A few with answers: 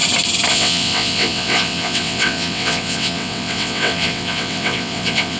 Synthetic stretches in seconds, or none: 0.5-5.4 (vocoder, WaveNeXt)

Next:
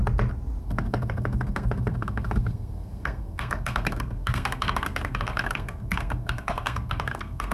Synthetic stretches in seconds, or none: 0.6-7.5 (codec, SNAC)

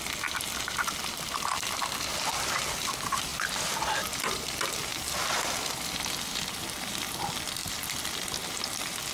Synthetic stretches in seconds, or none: 0.0-3.3 (vocoder, BigVGAN v2); 4.2-4.9; 6.9-7.6; 8.4-9.1

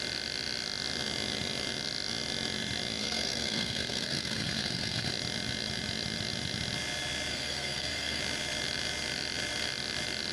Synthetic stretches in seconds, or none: 3.0-5.1 (codec, SNAC); 7.3-8.2

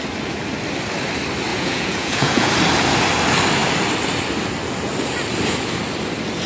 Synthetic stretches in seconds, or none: 1.5-2.5 (vocoder, Vocos)

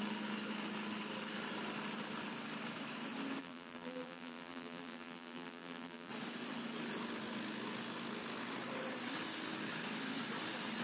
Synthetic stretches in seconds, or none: 3.4-6.1 (vocoder, BigVGAN v2)